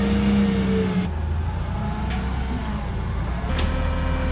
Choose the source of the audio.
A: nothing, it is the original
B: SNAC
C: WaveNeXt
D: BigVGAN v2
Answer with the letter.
A